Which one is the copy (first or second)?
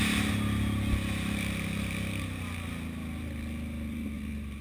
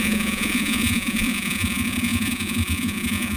second